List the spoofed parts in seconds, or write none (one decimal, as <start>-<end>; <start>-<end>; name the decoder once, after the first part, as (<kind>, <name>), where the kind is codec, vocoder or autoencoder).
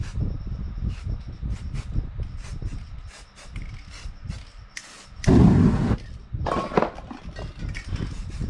none